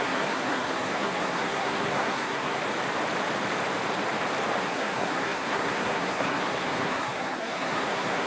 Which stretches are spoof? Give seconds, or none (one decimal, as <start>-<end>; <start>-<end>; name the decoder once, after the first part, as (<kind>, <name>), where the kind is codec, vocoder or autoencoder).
0.0-2.6 (codec, SNAC); 4.6-8.3